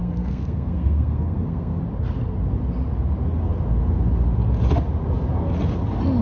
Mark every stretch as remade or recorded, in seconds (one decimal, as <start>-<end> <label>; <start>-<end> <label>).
0.0-1.8 remade; 1.8-6.2 recorded